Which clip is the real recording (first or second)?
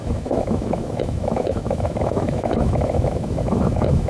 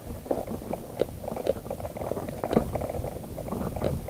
second